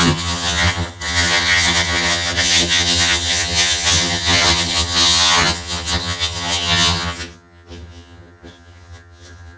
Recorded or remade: remade